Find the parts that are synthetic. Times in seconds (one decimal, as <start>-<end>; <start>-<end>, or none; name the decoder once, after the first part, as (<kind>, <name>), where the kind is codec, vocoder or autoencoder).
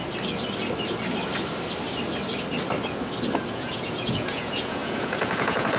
3.5-5.8 (vocoder, Vocos)